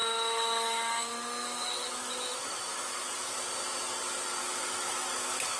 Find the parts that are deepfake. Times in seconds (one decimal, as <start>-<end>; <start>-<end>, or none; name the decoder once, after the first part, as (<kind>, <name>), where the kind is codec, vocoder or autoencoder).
0.0-3.4 (autoencoder, DAC-VAE); 4.4-5.6